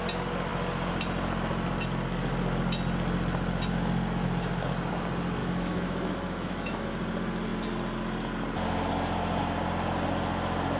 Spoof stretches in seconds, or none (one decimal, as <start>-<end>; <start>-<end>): 5.4-6.9